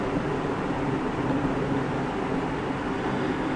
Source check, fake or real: real